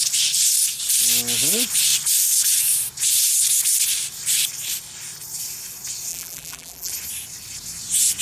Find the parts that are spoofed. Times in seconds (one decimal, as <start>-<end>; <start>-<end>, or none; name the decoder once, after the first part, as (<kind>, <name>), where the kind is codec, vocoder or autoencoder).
6.1-6.9 (vocoder, BigVGAN v2)